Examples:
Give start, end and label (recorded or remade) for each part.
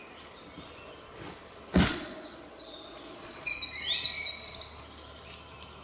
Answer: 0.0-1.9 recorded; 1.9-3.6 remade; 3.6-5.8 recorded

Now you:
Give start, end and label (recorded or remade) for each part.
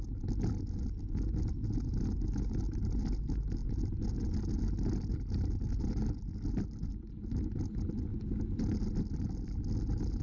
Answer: 0.0-10.2 recorded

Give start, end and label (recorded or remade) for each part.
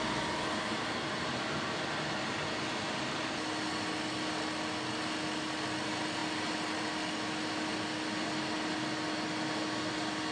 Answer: 0.0-10.3 recorded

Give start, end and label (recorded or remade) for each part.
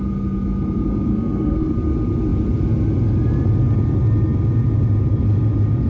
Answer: 0.0-1.1 recorded; 1.1-1.7 remade; 1.7-5.9 recorded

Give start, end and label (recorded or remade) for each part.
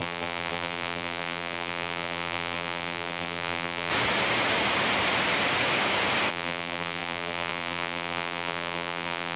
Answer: 0.0-3.9 remade; 3.9-6.3 recorded; 6.3-9.4 remade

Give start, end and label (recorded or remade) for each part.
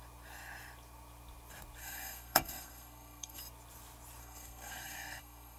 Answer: 0.0-1.8 recorded; 1.8-3.4 remade; 3.4-4.2 recorded; 4.2-5.6 remade